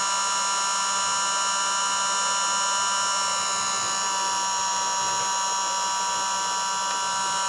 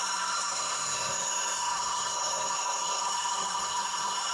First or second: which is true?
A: first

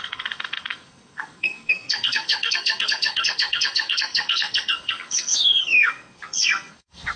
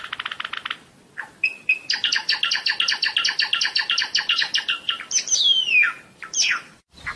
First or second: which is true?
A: second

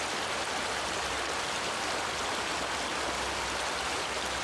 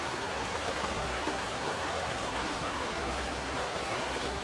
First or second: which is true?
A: first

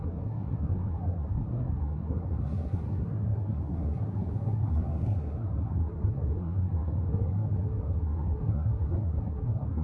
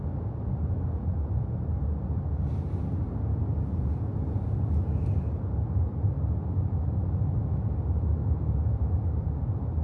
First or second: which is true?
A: second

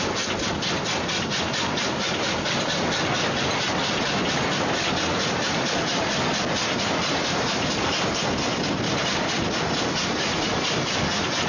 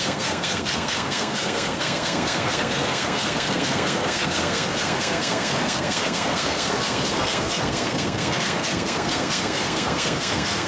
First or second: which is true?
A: first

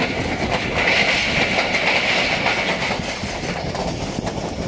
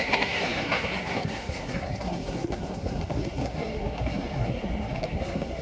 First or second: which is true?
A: first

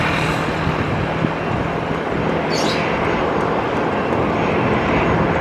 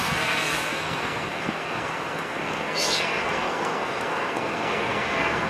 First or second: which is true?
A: first